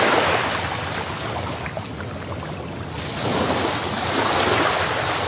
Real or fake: real